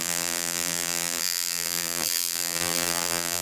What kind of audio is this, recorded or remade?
remade